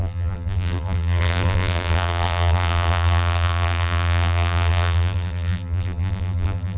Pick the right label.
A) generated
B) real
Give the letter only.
A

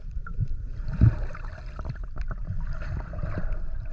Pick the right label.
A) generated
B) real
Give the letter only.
A